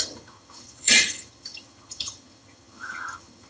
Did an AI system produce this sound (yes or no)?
yes